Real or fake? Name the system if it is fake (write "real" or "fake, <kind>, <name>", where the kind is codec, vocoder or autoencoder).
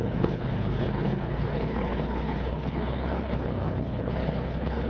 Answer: fake, codec, HILCodec